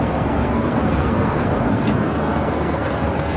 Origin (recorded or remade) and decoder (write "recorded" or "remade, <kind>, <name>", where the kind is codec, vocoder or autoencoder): remade, codec, SNAC